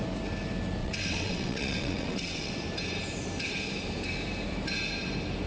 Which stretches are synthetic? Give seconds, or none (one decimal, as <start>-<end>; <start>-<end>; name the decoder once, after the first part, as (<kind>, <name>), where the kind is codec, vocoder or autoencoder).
0.8-2.5 (vocoder, WaveNeXt)